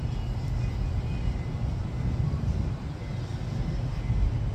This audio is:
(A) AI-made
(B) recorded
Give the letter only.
B